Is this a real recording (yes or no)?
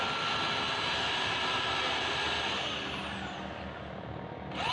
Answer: yes